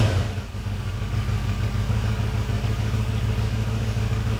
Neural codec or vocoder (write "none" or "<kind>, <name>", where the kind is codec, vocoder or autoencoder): codec, DAC